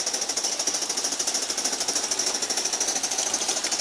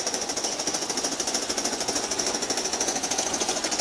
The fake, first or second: second